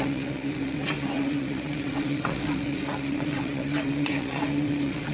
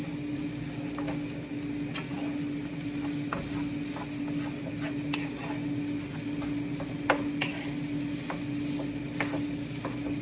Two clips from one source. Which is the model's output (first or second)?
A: first